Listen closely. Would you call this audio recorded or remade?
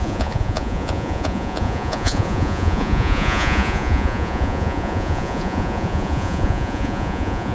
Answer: remade